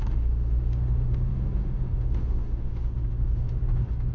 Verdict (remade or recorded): remade